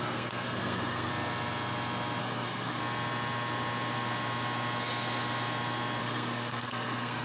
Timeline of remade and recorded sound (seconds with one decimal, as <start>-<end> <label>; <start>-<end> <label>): 0.0-1.1 remade; 1.1-2.2 recorded; 2.2-2.8 remade; 2.8-6.0 recorded; 6.0-7.2 remade